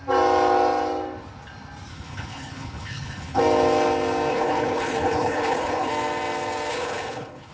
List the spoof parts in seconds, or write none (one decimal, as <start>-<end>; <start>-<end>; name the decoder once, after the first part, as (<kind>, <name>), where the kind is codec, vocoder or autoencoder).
1.9-3.4 (codec, HILCodec); 4.3-5.9; 6.7-7.5